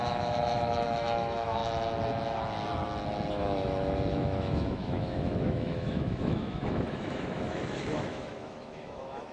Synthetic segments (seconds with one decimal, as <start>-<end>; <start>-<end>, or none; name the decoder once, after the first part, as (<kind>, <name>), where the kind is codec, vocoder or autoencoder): 0.0-1.6 (autoencoder, DAC-VAE); 3.3-9.3